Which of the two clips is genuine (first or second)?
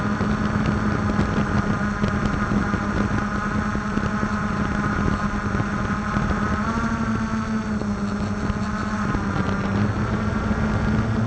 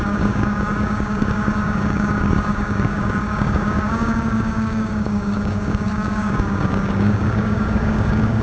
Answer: first